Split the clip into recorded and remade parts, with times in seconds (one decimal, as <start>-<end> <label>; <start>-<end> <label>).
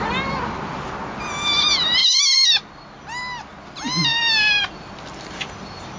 0.0-2.0 recorded; 2.0-2.6 remade; 2.6-6.0 recorded